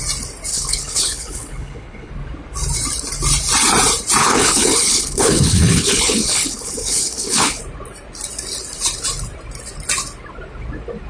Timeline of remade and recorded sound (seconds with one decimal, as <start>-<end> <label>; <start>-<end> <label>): 0.0-0.5 recorded; 0.5-2.1 remade; 2.1-4.2 recorded; 4.2-7.6 remade; 7.6-11.1 recorded